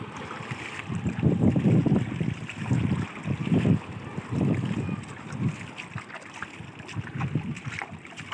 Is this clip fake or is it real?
real